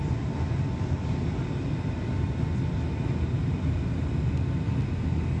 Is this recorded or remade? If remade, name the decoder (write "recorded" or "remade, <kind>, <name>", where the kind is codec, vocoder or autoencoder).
recorded